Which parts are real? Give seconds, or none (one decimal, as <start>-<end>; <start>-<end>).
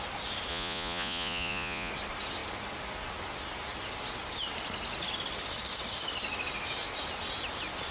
0.0-0.5; 1.9-7.9